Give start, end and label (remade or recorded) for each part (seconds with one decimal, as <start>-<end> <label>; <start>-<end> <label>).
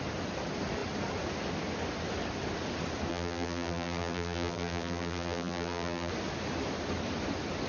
0.0-3.1 recorded; 3.1-6.1 remade; 6.1-7.7 recorded